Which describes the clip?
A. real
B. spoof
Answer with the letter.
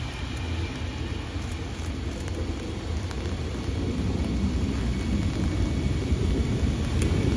A